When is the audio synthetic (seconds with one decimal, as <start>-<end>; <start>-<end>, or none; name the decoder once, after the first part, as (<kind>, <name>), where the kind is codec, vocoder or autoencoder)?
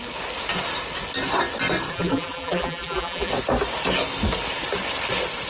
1.9-3.3 (vocoder, BigVGAN v2)